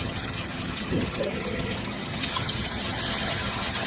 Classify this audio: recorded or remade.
remade